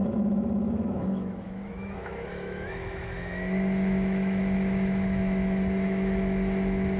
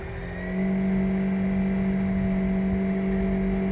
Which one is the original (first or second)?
second